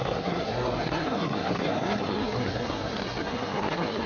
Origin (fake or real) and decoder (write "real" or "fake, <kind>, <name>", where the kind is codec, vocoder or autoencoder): fake, codec, SNAC